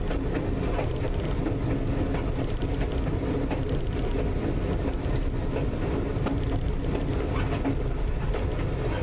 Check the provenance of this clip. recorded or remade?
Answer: recorded